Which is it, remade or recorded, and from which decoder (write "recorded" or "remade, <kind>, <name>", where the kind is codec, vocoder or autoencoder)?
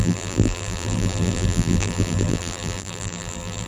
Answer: remade, vocoder, BigVGAN v2